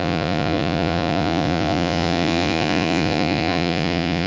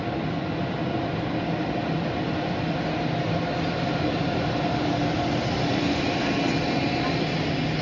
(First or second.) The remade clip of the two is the first